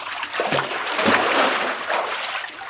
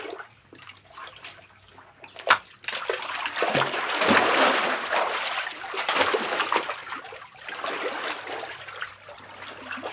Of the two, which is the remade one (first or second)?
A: first